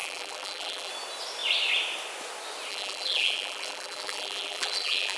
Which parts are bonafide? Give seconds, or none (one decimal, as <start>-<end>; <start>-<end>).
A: 0.9-2.7